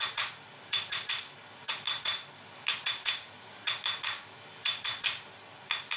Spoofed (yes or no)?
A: no